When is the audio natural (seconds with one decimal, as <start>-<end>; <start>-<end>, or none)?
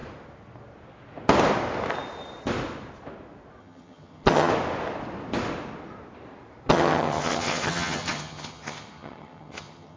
0.0-3.6; 4.5-6.7